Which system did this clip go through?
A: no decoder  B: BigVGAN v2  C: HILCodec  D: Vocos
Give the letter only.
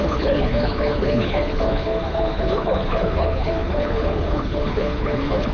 C